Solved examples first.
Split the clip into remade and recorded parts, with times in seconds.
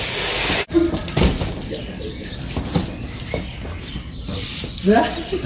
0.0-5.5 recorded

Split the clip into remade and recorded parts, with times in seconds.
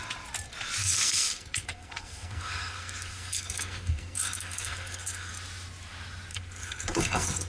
0.0-0.8 recorded; 0.8-5.3 remade; 5.3-6.3 recorded; 6.3-7.5 remade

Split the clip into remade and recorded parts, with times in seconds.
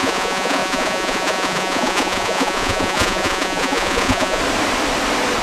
0.0-4.4 remade; 4.4-5.4 recorded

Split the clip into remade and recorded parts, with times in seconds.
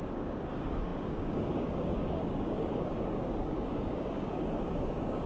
0.0-5.3 remade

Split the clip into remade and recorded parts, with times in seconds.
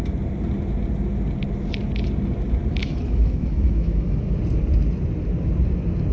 0.0-2.8 recorded; 2.8-4.4 remade; 4.4-6.1 recorded